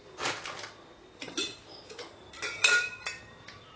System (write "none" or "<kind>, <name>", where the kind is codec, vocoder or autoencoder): none